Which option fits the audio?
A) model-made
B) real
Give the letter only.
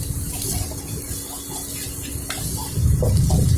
B